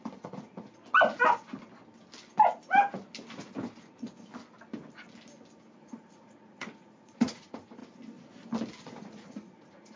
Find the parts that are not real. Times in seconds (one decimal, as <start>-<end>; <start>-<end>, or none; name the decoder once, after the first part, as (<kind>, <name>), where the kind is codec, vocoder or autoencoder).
0.0-0.8 (vocoder, Vocos); 5.7-7.8; 8.8-10.0